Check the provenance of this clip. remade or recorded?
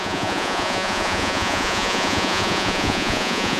remade